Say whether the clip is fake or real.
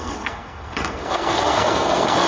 fake